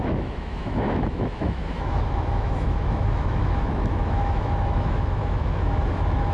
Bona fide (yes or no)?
no